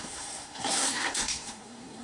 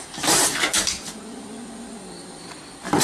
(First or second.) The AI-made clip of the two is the first